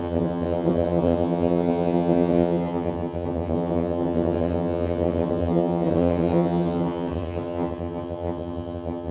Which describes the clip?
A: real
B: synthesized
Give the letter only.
B